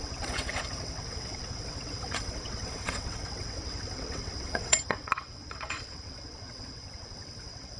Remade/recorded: remade